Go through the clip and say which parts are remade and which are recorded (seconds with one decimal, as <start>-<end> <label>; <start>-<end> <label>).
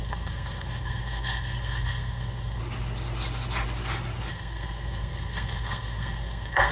0.0-2.6 remade; 2.6-4.3 recorded; 4.3-6.7 remade